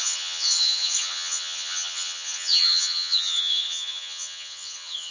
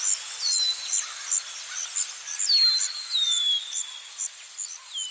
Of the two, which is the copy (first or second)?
first